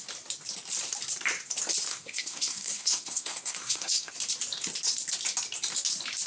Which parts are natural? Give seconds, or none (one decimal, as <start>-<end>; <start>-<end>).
0.0-1.9; 4.1-6.3

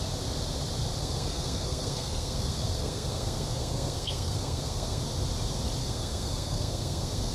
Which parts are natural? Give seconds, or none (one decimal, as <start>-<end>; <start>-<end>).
0.0-1.0; 5.0-5.8

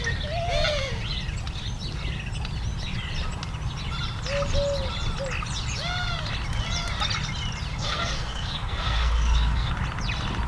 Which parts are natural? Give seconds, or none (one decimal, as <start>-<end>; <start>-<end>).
0.0-7.7; 9.7-10.5

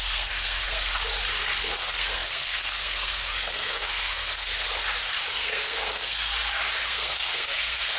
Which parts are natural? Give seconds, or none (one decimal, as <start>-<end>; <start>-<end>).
0.9-1.6; 4.5-5.3; 6.3-6.8

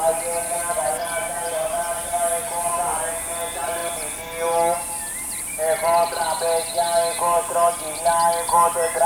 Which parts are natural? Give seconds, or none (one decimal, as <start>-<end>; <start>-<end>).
0.0-9.1

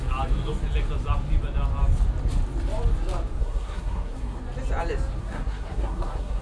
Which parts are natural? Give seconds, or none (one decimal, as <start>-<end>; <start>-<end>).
0.0-3.4; 4.4-5.2

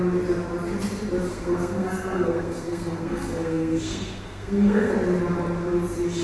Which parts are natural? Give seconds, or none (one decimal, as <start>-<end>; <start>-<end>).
0.0-1.3; 4.9-6.2

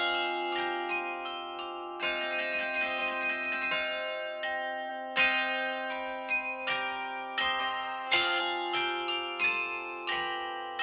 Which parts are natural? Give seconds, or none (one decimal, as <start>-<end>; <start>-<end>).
0.0-7.6; 8.4-10.8